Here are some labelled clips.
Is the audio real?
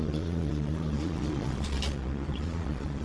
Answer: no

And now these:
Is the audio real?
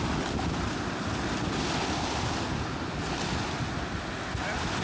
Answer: yes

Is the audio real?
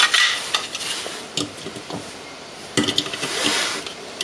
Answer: yes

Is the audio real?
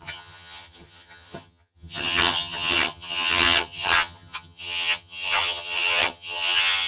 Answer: no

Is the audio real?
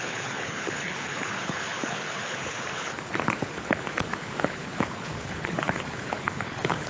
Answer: no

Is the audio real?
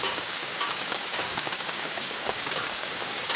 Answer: no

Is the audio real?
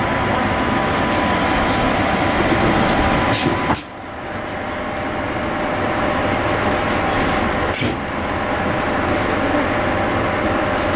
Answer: yes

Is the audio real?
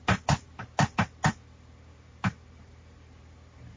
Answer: yes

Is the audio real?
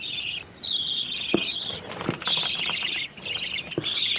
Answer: yes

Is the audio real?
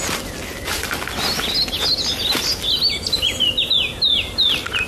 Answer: yes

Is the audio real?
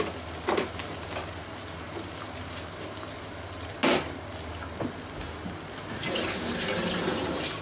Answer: yes